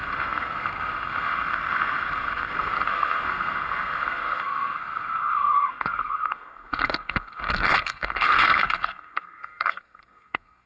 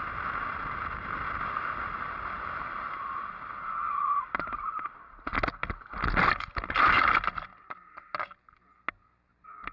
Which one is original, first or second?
second